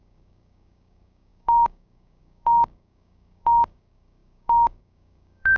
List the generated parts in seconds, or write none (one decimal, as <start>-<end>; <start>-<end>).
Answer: 0.0-5.6